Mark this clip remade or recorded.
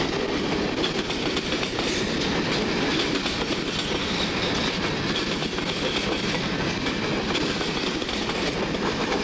recorded